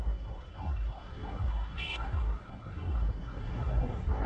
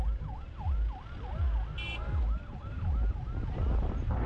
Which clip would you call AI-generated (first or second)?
first